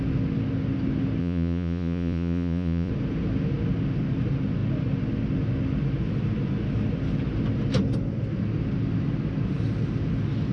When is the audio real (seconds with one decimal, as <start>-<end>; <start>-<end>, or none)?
0.0-1.2; 2.9-10.5